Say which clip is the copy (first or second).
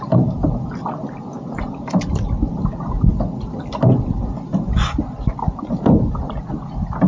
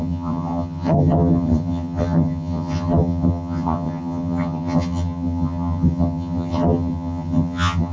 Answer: second